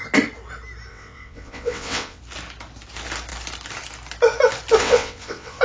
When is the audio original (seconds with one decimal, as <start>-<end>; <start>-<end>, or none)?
0.0-0.9; 2.2-4.8